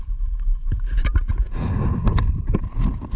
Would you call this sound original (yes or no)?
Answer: yes